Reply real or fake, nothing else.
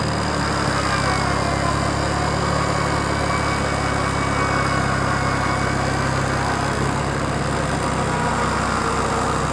real